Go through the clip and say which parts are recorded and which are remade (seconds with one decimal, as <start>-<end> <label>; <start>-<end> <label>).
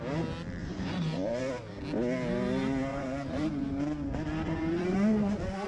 0.0-0.6 recorded; 0.6-1.4 remade; 1.4-2.9 recorded; 2.9-5.7 remade